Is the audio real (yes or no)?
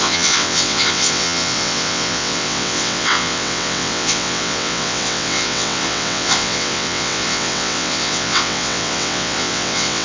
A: no